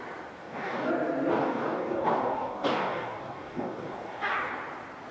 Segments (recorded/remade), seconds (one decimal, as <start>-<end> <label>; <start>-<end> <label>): 0.0-0.4 recorded; 0.4-0.9 remade; 0.9-1.4 recorded; 1.4-4.5 remade; 4.5-5.1 recorded